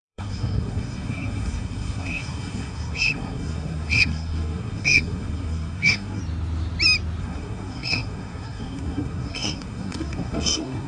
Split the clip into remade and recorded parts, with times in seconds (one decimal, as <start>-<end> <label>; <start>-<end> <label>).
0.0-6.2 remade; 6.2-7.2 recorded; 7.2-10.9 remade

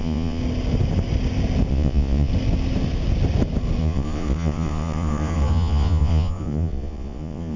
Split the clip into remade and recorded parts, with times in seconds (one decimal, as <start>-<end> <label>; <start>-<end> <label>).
0.0-0.4 remade; 0.4-1.7 recorded; 1.7-2.3 remade; 2.3-3.8 recorded; 3.8-7.6 remade

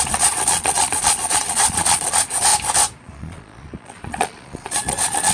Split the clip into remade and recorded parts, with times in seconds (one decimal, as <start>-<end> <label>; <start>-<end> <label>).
0.0-2.5 remade; 2.5-3.0 recorded; 3.0-5.3 remade